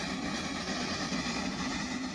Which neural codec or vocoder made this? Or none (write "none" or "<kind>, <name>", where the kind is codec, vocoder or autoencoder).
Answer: none